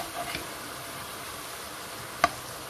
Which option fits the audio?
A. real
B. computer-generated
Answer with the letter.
A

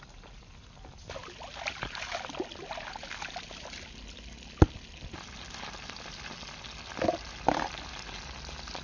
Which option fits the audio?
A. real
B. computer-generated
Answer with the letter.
A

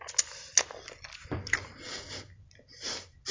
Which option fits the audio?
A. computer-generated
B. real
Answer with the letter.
B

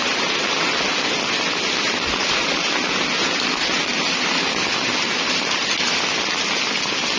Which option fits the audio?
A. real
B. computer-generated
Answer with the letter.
A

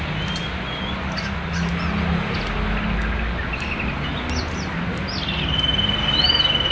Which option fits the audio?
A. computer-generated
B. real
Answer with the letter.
B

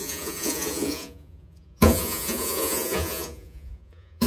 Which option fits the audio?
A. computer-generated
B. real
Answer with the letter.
A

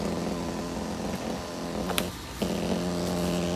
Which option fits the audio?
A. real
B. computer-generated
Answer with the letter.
A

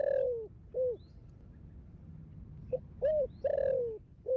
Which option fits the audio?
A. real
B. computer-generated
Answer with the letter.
A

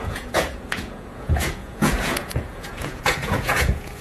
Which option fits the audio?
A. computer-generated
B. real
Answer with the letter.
A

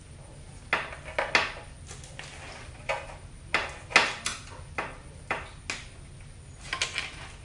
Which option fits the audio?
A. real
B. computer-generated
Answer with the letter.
A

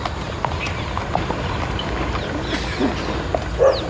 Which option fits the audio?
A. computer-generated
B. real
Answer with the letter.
B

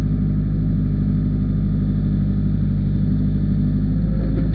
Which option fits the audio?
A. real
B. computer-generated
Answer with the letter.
A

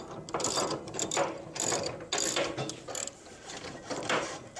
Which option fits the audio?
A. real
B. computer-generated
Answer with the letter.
A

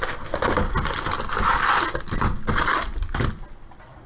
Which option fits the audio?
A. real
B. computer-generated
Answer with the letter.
A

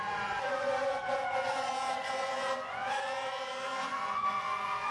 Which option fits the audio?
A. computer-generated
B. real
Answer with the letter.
A